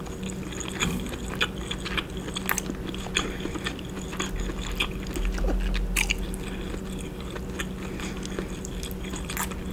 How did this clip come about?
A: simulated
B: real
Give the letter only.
B